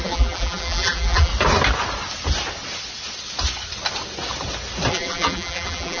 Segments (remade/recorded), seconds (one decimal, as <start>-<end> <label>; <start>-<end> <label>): 0.0-1.3 remade; 1.3-4.9 recorded; 4.9-6.0 remade